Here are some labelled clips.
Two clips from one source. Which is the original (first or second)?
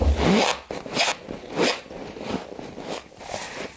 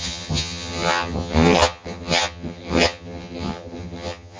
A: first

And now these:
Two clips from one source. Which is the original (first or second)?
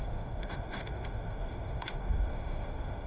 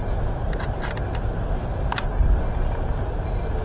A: second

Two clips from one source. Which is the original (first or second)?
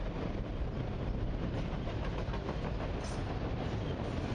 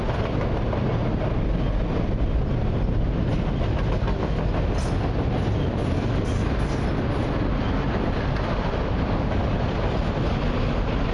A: second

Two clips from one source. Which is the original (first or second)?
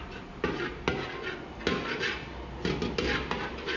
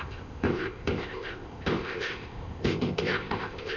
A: first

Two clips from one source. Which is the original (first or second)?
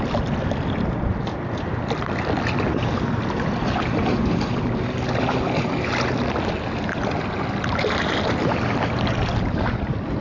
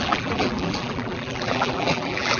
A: first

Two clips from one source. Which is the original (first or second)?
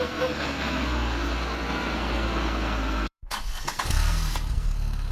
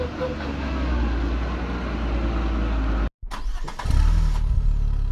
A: second